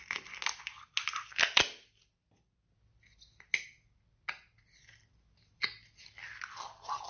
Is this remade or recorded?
recorded